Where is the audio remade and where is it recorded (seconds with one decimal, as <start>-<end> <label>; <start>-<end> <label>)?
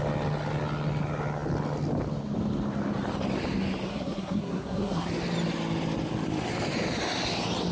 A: 0.0-3.9 recorded; 3.9-5.1 remade; 5.1-7.7 recorded